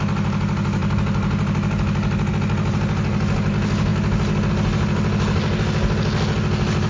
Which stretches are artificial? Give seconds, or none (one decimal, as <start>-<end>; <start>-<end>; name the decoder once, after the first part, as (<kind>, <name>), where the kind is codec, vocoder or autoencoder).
none